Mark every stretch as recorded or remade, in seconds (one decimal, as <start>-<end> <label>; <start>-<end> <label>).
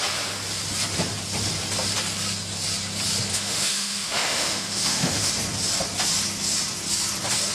0.0-3.3 recorded; 3.3-5.3 remade; 5.3-7.5 recorded